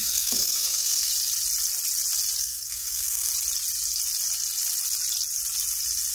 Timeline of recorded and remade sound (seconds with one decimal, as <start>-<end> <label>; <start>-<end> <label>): 0.0-1.1 remade; 1.1-2.4 recorded; 2.4-3.3 remade; 3.3-6.1 recorded